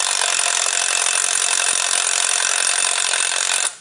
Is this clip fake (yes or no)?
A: no